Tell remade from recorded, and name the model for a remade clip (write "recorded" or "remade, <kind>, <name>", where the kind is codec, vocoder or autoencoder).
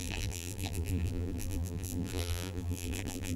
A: remade, vocoder, BigVGAN v2